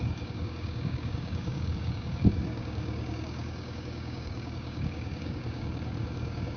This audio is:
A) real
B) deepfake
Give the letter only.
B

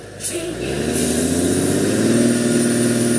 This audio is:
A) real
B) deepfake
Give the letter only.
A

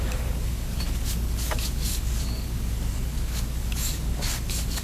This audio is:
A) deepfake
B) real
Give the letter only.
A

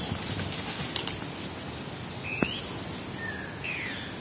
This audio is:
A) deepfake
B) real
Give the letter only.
B